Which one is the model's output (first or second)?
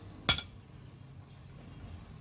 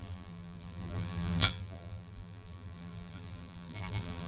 second